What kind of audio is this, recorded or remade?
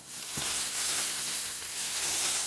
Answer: remade